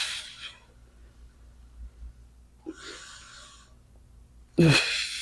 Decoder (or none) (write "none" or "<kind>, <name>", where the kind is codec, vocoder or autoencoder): none